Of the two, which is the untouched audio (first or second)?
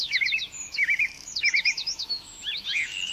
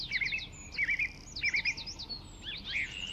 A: second